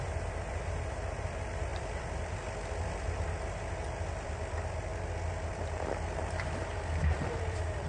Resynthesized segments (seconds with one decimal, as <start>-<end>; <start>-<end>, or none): 0.0-4.9; 5.5-7.9

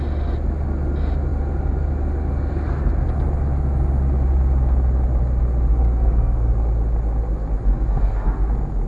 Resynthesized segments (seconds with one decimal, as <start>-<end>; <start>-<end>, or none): 5.7-6.5; 7.7-8.5

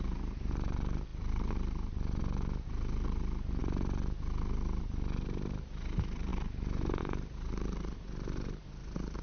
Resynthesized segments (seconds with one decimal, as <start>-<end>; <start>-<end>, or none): 0.0-3.6; 4.8-9.2

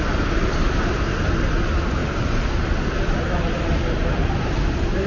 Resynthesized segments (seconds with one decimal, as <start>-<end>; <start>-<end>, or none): 0.0-5.1

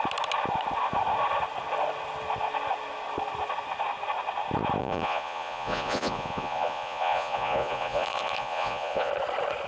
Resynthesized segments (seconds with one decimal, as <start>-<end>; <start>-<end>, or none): 4.8-9.1

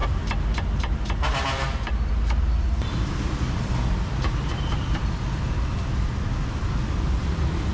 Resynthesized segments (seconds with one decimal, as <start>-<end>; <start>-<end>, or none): none

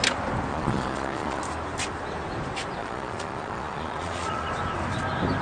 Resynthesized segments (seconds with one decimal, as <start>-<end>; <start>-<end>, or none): 0.5-1.4; 2.8-4.5

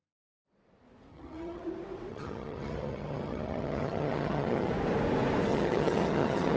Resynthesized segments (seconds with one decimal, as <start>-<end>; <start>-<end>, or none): 1.1-1.6; 2.1-4.7; 5.5-6.6